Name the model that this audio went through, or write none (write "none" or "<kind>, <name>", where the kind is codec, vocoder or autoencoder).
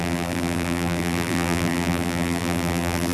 vocoder, BigVGAN v2